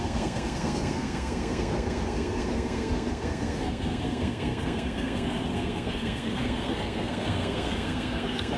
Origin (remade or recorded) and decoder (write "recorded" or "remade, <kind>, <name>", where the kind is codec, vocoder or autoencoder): remade, codec, SNAC